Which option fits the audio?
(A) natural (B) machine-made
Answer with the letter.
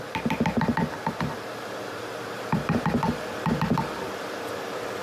A